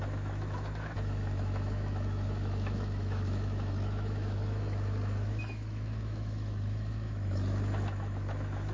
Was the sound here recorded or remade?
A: remade